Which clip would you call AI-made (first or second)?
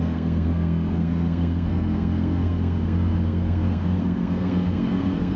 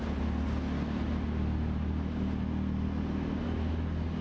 first